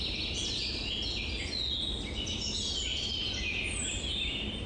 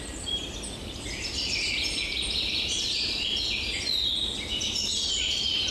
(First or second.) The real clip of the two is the first